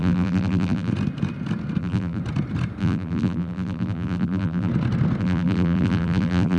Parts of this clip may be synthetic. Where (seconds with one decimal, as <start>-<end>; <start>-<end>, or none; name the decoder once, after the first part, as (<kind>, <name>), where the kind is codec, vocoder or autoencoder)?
0.0-0.9 (vocoder, BigVGAN v2); 1.8-2.2; 2.8-4.7; 5.2-6.6